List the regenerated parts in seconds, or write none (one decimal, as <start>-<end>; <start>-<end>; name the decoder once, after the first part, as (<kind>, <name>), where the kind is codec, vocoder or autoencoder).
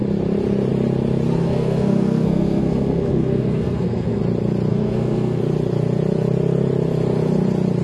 1.4-4.2 (codec, SNAC); 4.7-5.4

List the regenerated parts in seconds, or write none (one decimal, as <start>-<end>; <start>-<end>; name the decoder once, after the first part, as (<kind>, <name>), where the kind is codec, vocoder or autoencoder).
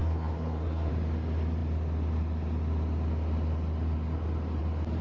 0.0-0.9 (codec, SNAC)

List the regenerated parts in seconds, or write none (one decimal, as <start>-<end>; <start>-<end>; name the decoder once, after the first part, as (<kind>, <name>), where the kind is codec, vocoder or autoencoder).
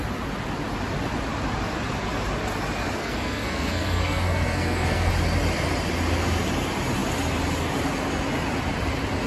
3.0-5.1 (codec, SNAC)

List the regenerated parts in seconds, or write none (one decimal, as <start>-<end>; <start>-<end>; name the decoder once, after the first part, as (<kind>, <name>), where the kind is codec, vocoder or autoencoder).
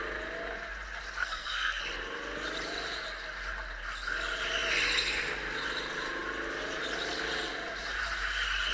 1.2-1.8 (codec, SNAC)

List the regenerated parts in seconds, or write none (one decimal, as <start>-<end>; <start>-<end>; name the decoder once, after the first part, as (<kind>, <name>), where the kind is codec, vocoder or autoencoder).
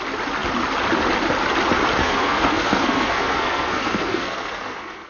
2.0-5.1 (codec, SNAC)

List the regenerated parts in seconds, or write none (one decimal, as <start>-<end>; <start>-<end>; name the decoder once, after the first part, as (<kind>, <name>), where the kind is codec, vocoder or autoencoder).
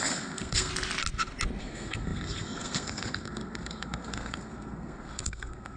0.0-0.7 (codec, SNAC); 1.6-5.8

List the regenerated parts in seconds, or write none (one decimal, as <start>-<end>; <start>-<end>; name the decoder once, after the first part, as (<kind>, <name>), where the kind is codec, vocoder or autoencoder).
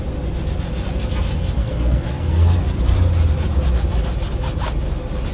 1.6-2.8 (codec, SNAC)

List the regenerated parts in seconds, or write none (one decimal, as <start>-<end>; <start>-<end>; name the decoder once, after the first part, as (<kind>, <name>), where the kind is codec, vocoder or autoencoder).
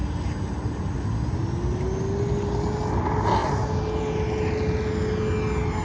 none